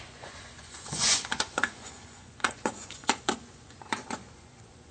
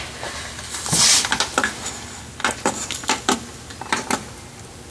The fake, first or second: first